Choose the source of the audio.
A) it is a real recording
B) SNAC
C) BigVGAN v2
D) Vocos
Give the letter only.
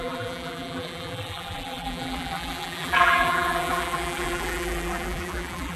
C